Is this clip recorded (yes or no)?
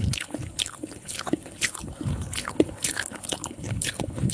no